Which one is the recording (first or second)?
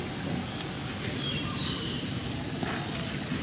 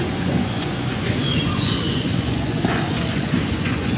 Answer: first